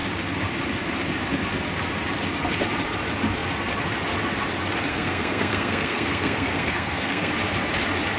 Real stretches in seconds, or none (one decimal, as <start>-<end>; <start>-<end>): 0.0-4.9; 7.3-8.2